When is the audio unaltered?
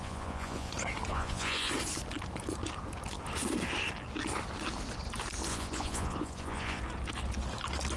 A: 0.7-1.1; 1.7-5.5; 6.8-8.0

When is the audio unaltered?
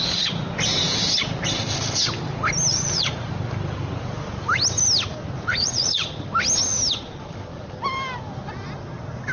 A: 0.0-2.7; 3.3-5.2; 6.1-9.3